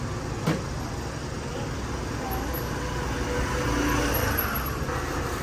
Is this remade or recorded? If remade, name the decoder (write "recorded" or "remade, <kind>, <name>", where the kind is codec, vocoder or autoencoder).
recorded